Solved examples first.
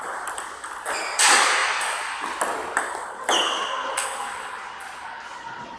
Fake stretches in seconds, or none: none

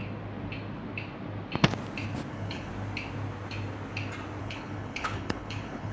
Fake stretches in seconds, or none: 2.3-2.7 (codec, HILCodec); 4.4-5.9

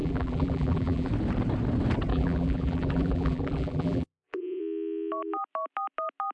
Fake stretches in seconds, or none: 0.0-1.1 (vocoder, BigVGAN v2); 2.1-4.6

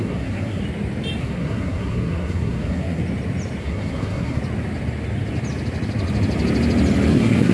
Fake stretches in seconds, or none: 0.0-0.6 (codec, SNAC); 1.2-3.0; 3.6-4.4; 7.1-7.5

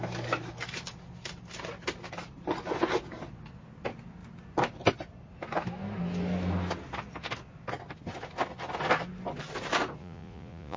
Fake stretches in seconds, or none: 10.0-10.8 (vocoder, Vocos)

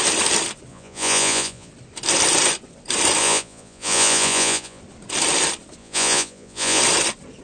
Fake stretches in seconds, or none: 0.7-1.7 (vocoder, Vocos); 3.2-4.8; 5.8-6.8

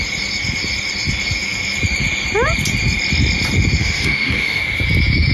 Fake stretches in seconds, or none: 3.8-4.6 (autoencoder, DAC-VAE)

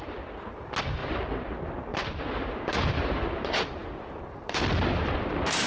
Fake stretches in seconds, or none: 0.0-5.7 (vocoder, BigVGAN v2)